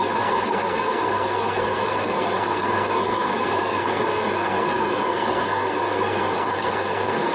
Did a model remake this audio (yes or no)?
yes